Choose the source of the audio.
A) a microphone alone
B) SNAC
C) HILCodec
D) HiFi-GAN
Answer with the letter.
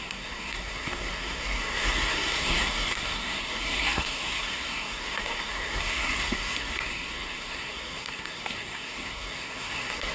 B